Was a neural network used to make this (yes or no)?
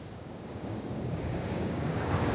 yes